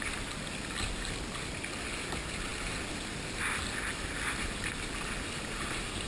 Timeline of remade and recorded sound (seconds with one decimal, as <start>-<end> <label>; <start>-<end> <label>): 0.0-6.1 recorded